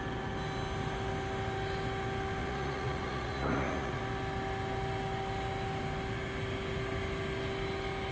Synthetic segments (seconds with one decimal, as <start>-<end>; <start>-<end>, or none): 2.4-4.0